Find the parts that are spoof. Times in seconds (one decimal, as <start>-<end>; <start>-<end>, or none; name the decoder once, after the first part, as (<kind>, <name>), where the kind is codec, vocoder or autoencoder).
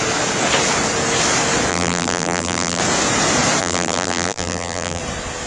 1.7-2.8 (vocoder, BigVGAN v2); 3.6-5.0